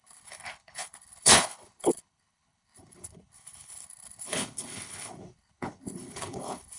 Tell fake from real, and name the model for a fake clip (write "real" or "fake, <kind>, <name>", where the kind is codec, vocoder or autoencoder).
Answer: fake, codec, HILCodec